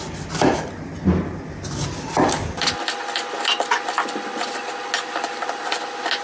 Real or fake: real